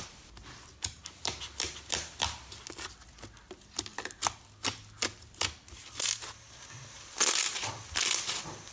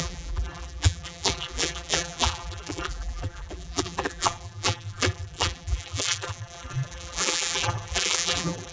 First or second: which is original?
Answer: first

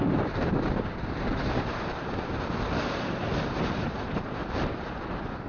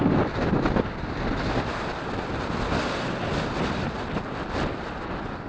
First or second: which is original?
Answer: second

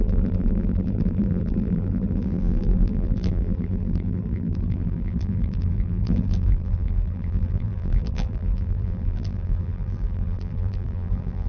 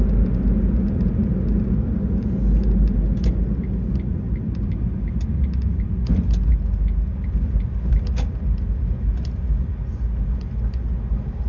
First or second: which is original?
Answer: second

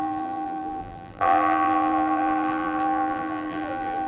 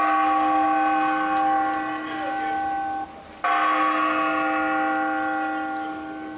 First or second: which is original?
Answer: second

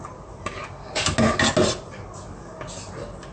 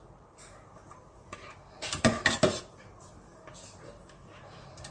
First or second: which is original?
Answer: first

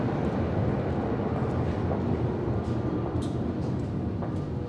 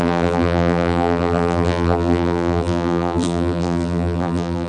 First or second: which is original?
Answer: first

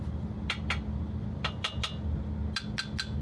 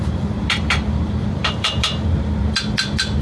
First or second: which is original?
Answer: first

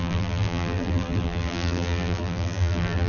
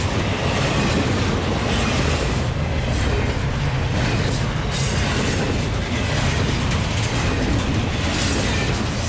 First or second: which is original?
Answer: second